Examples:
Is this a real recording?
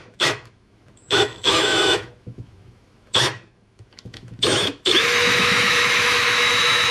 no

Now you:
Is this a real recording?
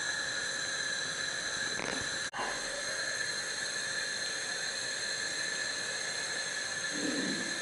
yes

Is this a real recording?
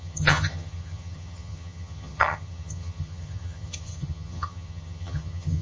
no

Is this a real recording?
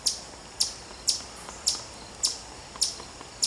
yes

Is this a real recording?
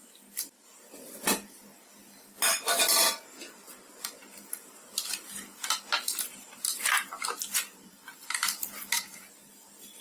yes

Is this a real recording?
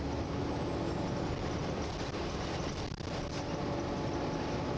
yes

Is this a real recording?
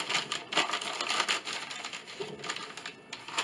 yes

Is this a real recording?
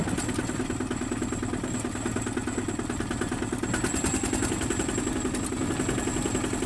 yes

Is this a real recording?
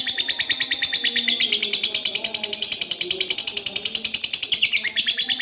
yes